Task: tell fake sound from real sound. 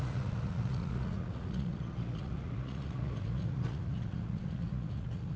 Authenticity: fake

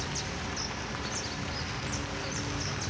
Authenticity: real